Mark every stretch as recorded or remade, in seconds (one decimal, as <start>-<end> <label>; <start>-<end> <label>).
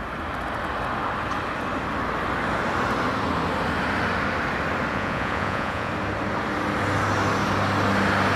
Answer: 0.0-4.9 recorded; 4.9-5.9 remade; 5.9-8.4 recorded